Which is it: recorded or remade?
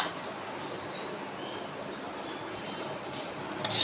recorded